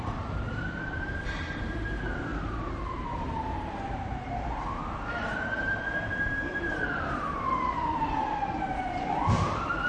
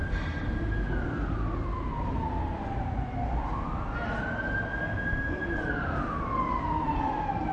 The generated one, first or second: first